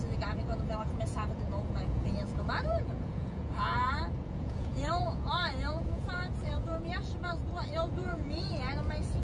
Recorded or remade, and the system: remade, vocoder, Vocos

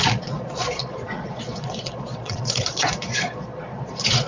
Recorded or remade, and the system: remade, vocoder, Vocos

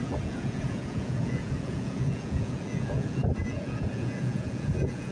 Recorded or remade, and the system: remade, vocoder, Vocos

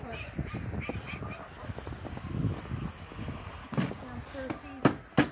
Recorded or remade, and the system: recorded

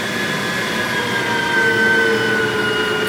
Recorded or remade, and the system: recorded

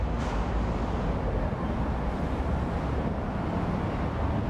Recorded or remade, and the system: recorded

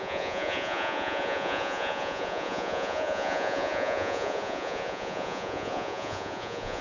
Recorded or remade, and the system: remade, vocoder, Vocos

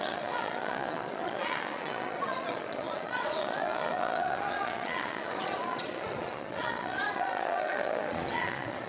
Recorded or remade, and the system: remade, vocoder, Vocos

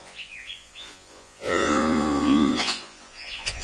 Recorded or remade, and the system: remade, vocoder, Vocos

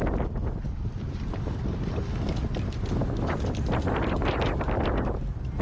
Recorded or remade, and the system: recorded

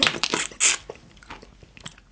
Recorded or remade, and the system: recorded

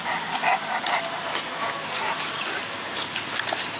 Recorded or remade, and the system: recorded